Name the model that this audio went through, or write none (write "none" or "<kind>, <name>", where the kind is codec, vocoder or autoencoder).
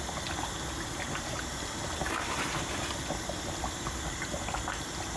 none